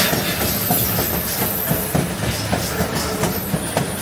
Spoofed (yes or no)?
no